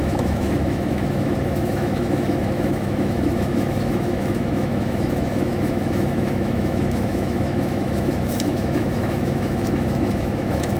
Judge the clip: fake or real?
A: fake